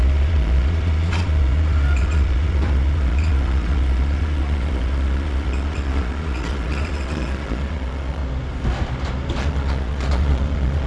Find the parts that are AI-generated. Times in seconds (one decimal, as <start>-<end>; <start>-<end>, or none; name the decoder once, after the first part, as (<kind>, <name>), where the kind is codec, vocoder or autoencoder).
0.0-8.2 (vocoder, Vocos); 9.4-10.9